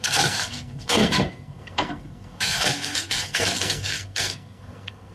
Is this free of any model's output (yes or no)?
no